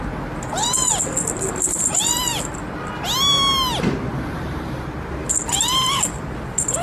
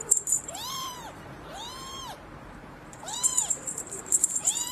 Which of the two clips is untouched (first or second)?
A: first